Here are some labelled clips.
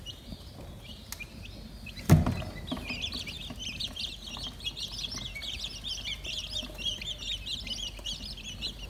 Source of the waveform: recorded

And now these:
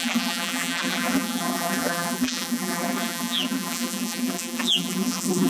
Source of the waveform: remade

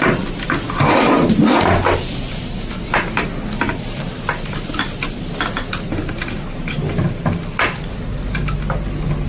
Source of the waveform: remade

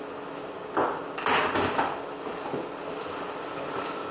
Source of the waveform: recorded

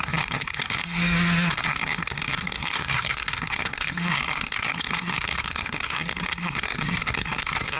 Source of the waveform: remade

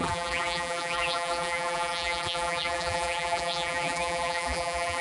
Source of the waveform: remade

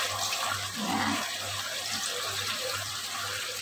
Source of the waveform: remade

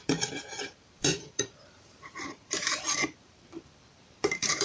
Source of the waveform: remade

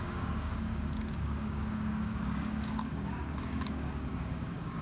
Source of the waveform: remade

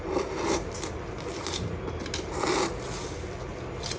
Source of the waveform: recorded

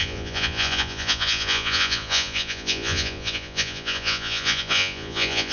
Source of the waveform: remade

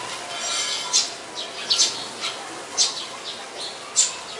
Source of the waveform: recorded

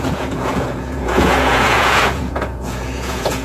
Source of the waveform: remade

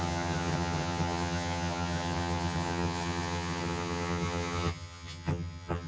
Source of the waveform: remade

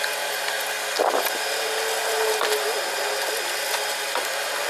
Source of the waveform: recorded